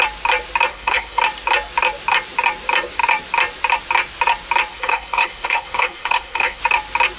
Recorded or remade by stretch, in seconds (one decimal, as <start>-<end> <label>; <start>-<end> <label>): 0.0-0.7 recorded; 0.7-1.2 remade; 1.2-4.7 recorded; 4.7-6.6 remade; 6.6-7.2 recorded